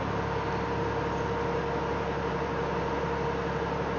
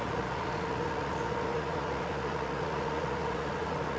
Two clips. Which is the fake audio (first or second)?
second